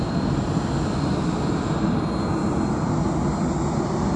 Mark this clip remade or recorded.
recorded